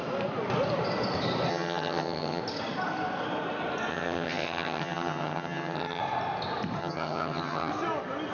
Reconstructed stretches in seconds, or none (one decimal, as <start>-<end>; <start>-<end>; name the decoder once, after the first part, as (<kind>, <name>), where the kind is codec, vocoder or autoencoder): 1.5-2.4 (vocoder, HiFi-GAN); 3.9-6.0; 6.8-7.7

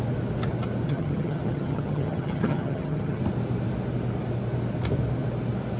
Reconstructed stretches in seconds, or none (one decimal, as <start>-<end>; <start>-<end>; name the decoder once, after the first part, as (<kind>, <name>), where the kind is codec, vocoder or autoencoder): 0.9-3.2 (vocoder, HiFi-GAN)

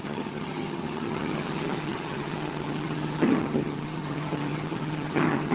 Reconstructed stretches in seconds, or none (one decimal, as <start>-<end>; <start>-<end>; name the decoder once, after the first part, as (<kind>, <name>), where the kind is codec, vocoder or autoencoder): 0.0-5.5 (vocoder, HiFi-GAN)